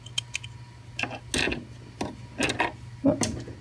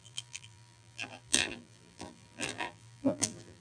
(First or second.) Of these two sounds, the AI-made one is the second